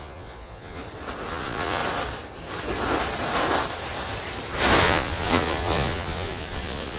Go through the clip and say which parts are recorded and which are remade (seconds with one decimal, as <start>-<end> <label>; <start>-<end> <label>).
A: 0.0-0.8 remade; 0.8-1.3 recorded; 1.3-1.8 remade; 1.8-4.8 recorded; 4.8-7.0 remade

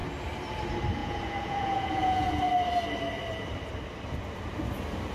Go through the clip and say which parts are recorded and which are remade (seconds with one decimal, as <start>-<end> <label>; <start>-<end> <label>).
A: 0.0-1.0 recorded; 1.0-2.4 remade; 2.4-5.1 recorded

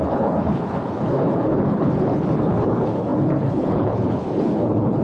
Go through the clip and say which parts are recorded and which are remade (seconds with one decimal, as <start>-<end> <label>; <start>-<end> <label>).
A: 0.0-5.0 remade

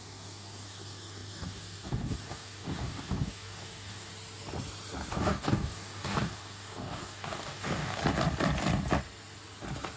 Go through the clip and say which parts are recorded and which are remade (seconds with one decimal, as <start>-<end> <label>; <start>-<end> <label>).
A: 0.0-4.1 remade; 4.1-5.1 recorded; 5.1-8.0 remade; 8.0-10.0 recorded